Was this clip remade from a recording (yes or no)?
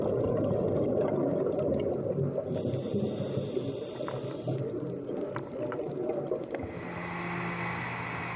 no